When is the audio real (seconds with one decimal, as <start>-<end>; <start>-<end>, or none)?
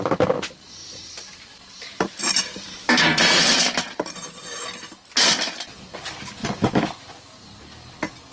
0.0-0.8; 4.9-6.4; 7.1-8.3